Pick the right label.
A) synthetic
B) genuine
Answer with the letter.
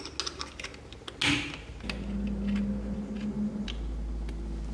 B